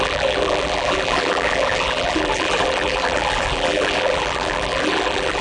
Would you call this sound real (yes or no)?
no